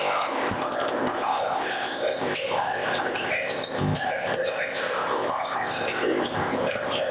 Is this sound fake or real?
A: fake